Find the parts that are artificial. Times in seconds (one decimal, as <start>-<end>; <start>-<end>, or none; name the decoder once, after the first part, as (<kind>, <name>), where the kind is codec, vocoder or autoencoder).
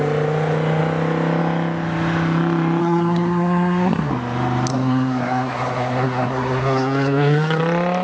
2.8-4.1 (codec, SNAC); 4.7-7.6